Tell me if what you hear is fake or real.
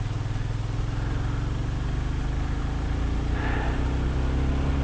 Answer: real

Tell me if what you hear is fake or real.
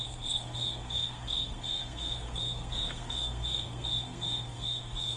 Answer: fake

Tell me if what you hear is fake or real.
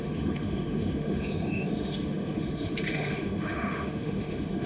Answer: fake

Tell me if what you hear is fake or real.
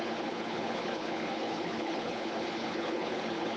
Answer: fake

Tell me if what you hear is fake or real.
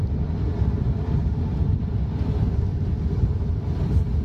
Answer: real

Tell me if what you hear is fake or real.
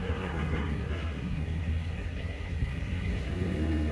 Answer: fake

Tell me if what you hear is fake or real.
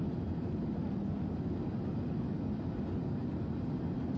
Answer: real